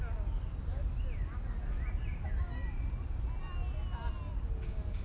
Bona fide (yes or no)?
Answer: yes